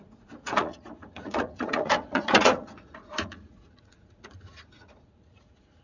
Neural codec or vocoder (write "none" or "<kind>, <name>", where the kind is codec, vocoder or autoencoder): vocoder, Vocos